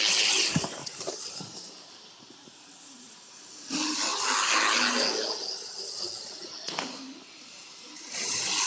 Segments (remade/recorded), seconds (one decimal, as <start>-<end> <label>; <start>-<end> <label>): 0.0-0.8 recorded; 0.8-3.4 remade; 3.4-8.7 recorded